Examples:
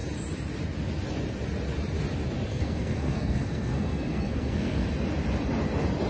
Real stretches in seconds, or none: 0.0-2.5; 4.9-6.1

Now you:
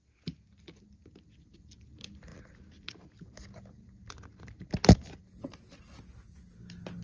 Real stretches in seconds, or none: 0.0-7.0

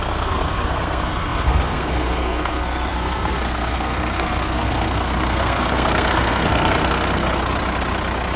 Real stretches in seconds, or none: 7.2-8.4

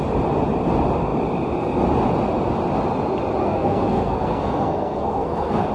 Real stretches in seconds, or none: 0.0-3.4

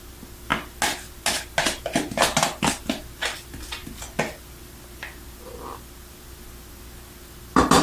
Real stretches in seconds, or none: 0.0-7.8

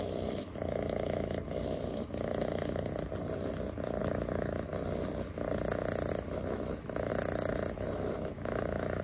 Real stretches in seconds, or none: 2.9-4.0; 4.7-6.1; 7.1-7.7